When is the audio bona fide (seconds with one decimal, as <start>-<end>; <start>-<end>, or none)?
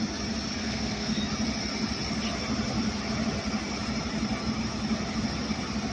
0.0-0.6; 1.2-5.9